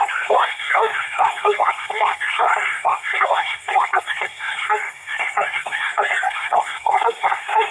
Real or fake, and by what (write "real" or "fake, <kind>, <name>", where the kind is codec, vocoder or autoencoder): fake, codec, SNAC